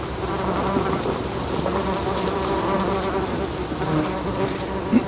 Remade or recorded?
recorded